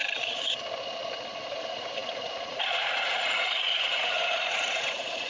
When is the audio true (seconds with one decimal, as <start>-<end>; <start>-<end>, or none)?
0.0-1.5